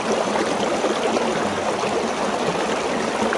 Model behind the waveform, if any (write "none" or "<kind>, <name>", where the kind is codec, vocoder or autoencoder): none